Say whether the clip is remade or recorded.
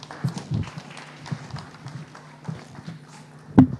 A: recorded